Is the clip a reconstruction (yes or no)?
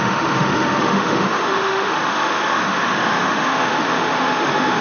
yes